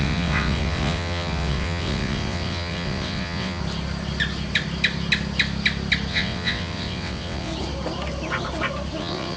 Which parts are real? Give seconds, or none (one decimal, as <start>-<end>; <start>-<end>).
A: 3.6-6.1; 7.5-9.0